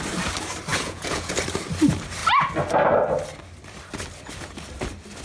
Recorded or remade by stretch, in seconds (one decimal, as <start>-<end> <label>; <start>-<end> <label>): 0.0-0.7 recorded; 0.7-1.3 remade; 1.3-5.2 recorded